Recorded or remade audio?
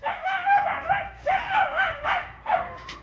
remade